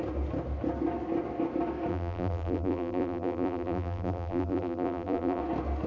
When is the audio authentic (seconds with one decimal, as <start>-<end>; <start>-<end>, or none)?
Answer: 0.0-1.9; 5.4-5.9